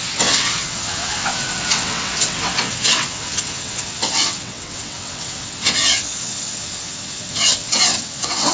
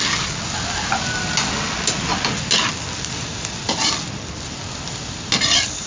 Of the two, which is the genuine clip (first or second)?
second